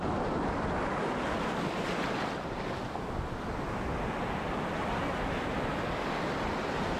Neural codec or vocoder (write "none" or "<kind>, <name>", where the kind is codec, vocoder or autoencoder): none